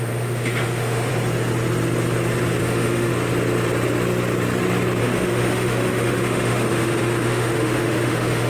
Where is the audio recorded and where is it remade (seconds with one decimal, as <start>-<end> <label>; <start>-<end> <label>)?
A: 0.0-1.1 remade; 1.1-2.6 recorded; 2.6-3.1 remade; 3.1-5.0 recorded; 5.0-8.5 remade